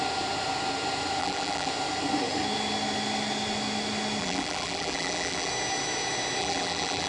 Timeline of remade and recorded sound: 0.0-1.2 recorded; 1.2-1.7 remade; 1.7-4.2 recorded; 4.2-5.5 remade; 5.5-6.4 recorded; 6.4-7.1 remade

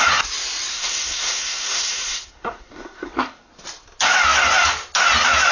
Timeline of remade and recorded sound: 0.0-0.7 recorded; 0.7-3.5 remade; 3.5-5.5 recorded

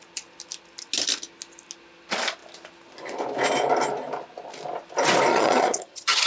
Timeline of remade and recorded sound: 0.0-5.3 recorded; 5.3-6.3 remade

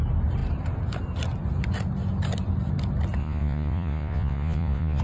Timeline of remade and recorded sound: 0.0-3.2 recorded; 3.2-5.0 remade

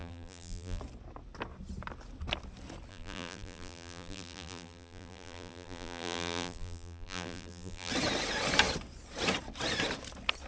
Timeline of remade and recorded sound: 0.0-0.8 remade; 0.8-2.9 recorded; 2.9-7.9 remade; 7.9-10.5 recorded